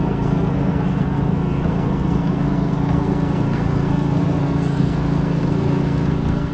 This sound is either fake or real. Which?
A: fake